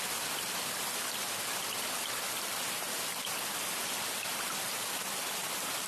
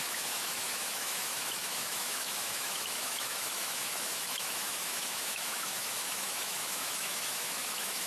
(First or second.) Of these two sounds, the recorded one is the first